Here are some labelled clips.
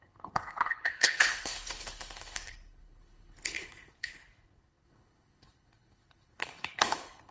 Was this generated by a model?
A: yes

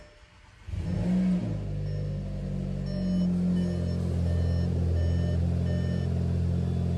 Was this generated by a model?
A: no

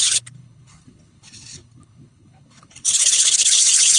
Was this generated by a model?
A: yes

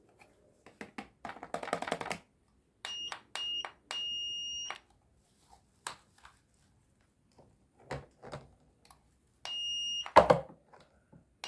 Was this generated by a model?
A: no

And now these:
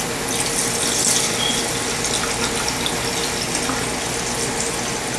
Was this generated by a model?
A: no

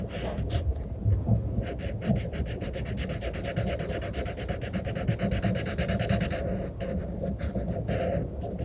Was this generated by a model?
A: no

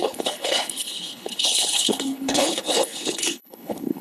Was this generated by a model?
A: yes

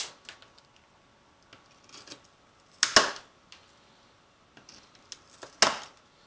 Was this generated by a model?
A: no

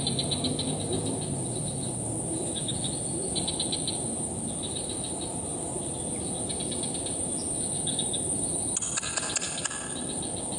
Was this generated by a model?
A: no